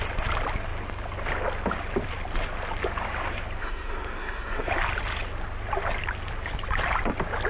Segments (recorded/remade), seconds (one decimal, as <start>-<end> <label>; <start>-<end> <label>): 0.0-3.6 recorded; 3.6-4.7 remade; 4.7-7.5 recorded